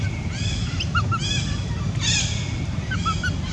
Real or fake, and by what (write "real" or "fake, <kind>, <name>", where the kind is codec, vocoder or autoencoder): real